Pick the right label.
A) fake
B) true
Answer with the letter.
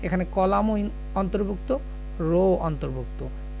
B